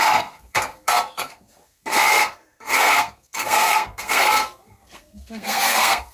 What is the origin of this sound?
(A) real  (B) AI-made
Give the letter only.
B